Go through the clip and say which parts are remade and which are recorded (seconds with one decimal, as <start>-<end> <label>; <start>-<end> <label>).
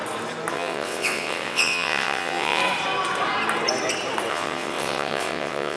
0.0-0.5 recorded; 0.5-2.6 remade; 2.6-4.3 recorded; 4.3-5.8 remade